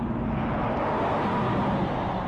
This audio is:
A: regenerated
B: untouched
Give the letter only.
B